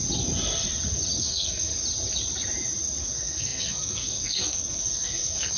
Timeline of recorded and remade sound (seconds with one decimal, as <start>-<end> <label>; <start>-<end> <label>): 0.0-1.2 recorded; 1.2-1.7 remade; 1.7-3.0 recorded; 3.0-5.6 remade